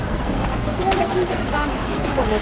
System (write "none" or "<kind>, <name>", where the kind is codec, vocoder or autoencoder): codec, SNAC